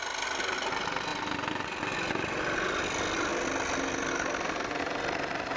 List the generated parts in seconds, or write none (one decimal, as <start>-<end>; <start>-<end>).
none